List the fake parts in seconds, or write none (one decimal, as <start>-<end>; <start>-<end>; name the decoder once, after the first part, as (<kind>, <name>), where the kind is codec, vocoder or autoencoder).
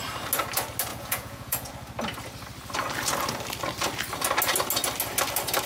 0.9-1.7 (vocoder, Vocos)